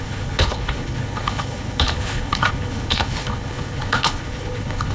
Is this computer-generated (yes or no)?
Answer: yes